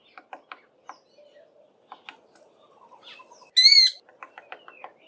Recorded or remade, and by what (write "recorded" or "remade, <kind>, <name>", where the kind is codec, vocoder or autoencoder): recorded